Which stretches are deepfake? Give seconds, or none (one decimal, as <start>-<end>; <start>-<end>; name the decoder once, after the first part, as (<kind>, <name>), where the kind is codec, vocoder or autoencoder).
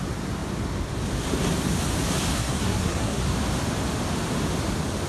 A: 2.3-3.2 (codec, SNAC)